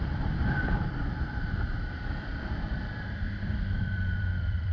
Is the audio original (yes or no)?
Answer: no